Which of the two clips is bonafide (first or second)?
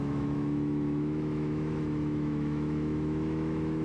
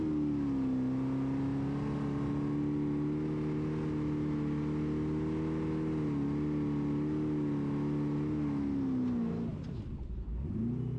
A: second